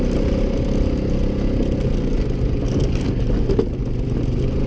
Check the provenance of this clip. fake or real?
real